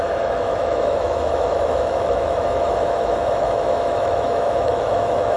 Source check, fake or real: fake